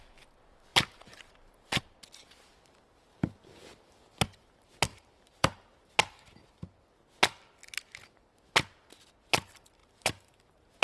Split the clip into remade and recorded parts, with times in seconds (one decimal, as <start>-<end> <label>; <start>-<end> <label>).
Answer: 0.0-0.7 recorded; 0.7-1.8 remade; 1.8-3.1 recorded; 3.1-4.2 remade; 4.2-4.9 recorded; 4.9-5.9 remade; 5.9-9.8 recorded; 9.8-10.4 remade; 10.4-10.8 recorded